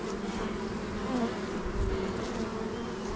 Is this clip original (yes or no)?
yes